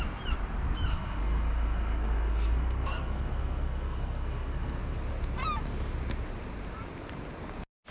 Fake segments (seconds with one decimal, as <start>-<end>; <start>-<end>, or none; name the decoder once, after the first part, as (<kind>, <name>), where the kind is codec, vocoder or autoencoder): 0.9-4.8 (codec, SNAC)